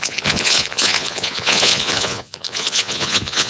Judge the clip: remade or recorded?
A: remade